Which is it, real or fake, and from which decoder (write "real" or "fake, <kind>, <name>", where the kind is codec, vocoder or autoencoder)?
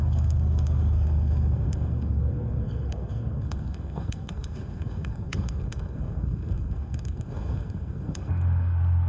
fake, codec, SNAC